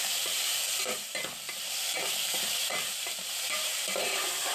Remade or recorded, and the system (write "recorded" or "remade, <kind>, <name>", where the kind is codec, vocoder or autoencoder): remade, vocoder, BigVGAN v2